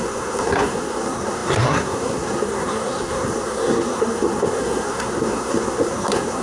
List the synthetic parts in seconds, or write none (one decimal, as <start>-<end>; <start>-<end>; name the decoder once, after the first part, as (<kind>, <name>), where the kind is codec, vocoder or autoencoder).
0.0-6.4 (codec, SNAC)